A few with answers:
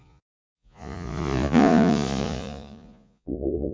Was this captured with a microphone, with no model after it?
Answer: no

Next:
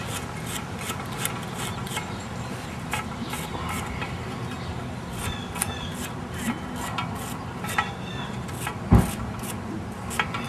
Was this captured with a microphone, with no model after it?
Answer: yes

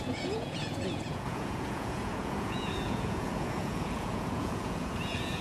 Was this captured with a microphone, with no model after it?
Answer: no